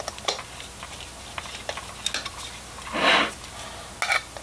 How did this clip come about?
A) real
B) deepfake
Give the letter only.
A